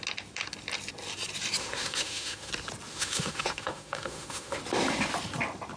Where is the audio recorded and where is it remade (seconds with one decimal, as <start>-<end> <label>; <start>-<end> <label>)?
0.0-1.6 recorded; 1.6-2.5 remade; 2.5-2.9 recorded; 2.9-4.6 remade; 4.6-5.8 recorded